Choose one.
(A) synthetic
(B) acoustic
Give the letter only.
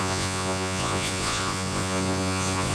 A